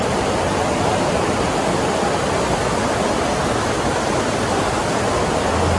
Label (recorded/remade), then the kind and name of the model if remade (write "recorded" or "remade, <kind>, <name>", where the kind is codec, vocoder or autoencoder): recorded